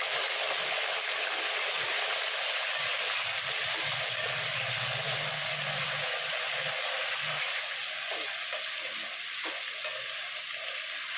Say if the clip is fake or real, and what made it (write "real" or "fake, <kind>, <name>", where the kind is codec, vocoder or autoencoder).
fake, vocoder, BigVGAN v2